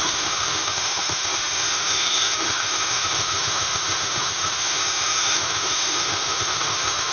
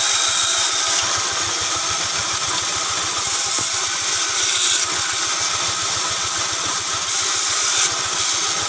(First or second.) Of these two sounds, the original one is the second